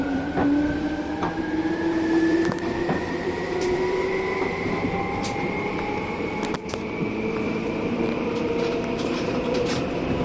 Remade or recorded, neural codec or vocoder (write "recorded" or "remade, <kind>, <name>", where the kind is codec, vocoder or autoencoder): remade, vocoder, BigVGAN v2